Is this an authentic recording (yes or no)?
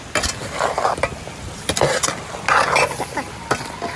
yes